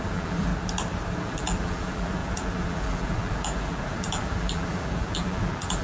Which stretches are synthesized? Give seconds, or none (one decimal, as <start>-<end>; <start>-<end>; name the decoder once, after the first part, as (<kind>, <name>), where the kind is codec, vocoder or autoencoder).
0.0-0.5 (vocoder, BigVGAN v2); 1.2-5.8